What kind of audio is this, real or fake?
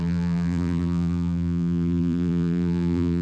fake